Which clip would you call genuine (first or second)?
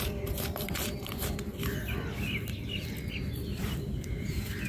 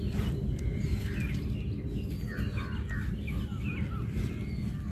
second